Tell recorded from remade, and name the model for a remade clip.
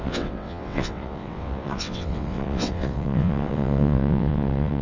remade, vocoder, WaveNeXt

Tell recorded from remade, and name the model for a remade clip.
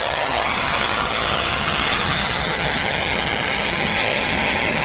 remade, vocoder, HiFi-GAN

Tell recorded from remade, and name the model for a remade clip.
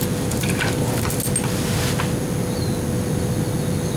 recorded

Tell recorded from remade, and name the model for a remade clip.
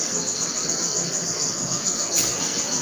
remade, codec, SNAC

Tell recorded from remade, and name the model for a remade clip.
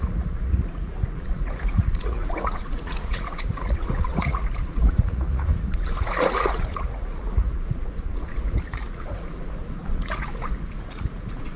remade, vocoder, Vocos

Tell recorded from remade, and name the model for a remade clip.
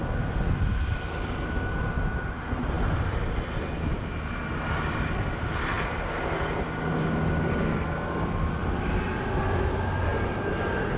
recorded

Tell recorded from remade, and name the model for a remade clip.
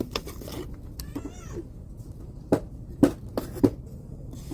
recorded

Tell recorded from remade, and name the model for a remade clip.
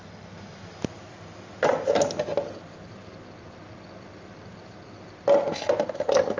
recorded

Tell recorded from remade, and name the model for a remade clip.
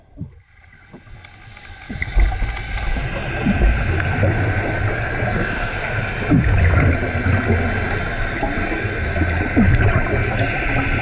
recorded